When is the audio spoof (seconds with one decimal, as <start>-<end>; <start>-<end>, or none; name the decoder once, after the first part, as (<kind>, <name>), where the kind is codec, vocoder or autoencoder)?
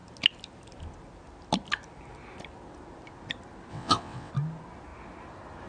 3.7-4.3 (vocoder, WaveNeXt)